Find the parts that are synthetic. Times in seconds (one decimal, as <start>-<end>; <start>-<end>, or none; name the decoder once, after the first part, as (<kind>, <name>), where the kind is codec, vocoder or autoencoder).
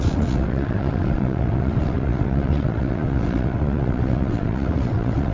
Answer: 0.0-5.3 (vocoder, WaveNeXt)